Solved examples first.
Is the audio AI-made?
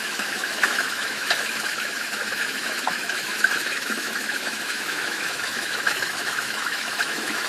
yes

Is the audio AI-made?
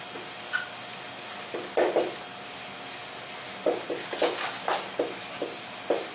no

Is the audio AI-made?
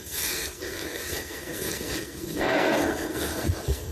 yes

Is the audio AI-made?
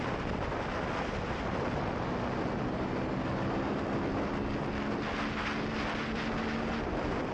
no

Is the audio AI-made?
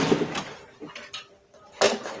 no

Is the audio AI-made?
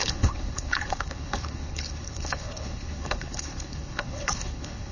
yes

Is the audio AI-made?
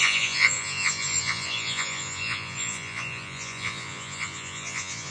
yes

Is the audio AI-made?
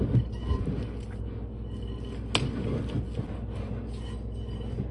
no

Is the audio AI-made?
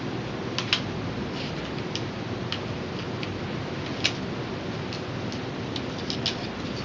no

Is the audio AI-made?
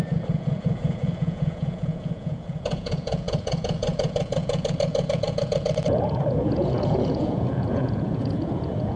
yes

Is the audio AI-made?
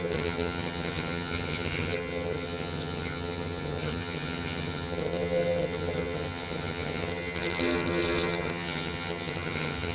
yes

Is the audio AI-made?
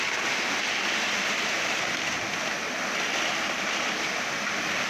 no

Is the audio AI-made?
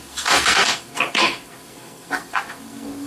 yes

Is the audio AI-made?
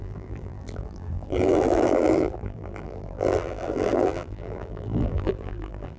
yes